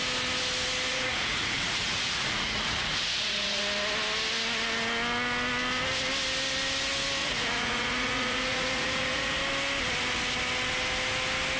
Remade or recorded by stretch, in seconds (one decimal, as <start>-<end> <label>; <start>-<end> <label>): 0.0-0.9 recorded; 0.9-3.6 remade; 3.6-7.2 recorded; 7.2-9.4 remade; 9.4-11.6 recorded